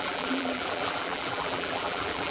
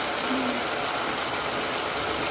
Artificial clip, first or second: first